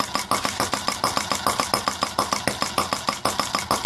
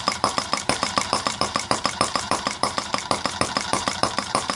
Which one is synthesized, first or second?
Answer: second